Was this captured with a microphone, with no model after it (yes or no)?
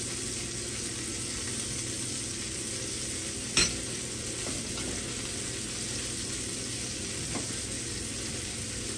yes